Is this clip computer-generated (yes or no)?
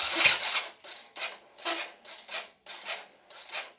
no